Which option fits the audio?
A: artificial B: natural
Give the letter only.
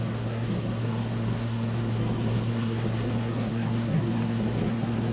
A